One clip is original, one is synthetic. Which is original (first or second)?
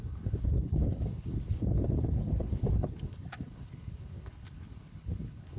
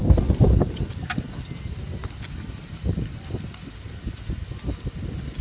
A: second